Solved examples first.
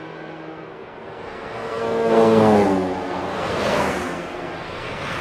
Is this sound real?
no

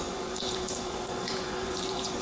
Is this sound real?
no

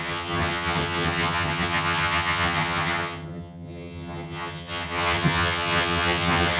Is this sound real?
no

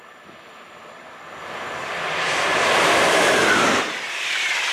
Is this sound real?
no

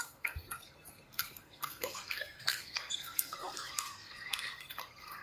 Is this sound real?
no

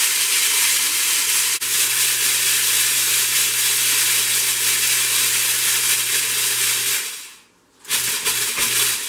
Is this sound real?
yes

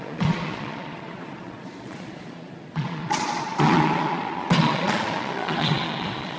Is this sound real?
no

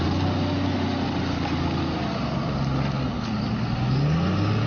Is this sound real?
yes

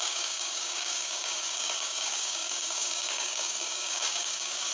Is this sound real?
no